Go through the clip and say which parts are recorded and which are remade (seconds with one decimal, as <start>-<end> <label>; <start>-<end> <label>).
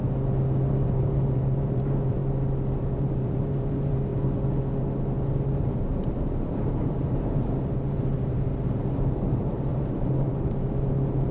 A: 0.0-0.7 recorded; 0.7-2.2 remade; 2.2-2.8 recorded; 2.8-4.1 remade; 4.1-5.6 recorded; 5.6-11.3 remade